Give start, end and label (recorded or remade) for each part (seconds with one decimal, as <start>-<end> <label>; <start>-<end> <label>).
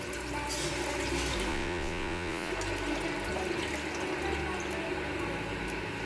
0.0-1.5 recorded; 1.5-2.5 remade; 2.5-6.1 recorded